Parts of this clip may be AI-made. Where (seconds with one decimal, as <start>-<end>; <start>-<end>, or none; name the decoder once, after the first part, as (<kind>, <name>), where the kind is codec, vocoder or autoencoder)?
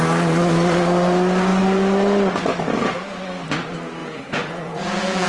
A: 4.0-5.3 (vocoder, Vocos)